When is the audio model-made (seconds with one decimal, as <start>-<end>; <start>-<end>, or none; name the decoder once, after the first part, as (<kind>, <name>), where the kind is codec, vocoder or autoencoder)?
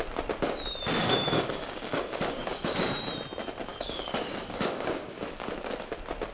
1.0-2.8 (codec, DAC); 3.7-5.2